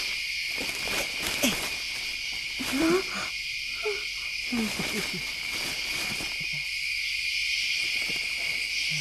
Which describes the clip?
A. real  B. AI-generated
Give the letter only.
A